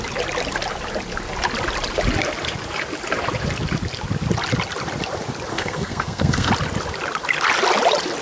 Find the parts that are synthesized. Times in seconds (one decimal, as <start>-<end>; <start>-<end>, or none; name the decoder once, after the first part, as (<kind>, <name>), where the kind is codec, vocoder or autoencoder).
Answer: 5.5-6.5 (codec, SNAC)